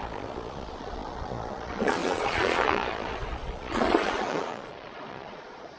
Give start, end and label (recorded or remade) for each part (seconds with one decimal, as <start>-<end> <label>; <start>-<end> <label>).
0.0-5.8 remade

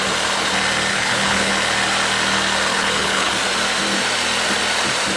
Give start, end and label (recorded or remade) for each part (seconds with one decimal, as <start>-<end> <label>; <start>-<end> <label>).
0.0-0.9 recorded; 0.9-1.5 remade; 1.5-2.7 recorded; 2.7-3.3 remade; 3.3-5.2 recorded

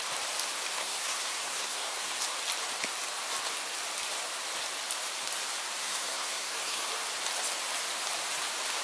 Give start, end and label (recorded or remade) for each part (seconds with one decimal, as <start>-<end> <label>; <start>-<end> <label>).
0.0-0.8 recorded; 0.8-2.1 remade; 2.1-5.8 recorded; 5.8-6.9 remade; 6.9-8.8 recorded

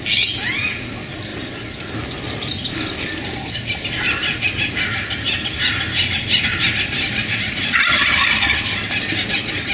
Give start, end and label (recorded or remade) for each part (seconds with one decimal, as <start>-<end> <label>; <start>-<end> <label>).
0.0-9.7 recorded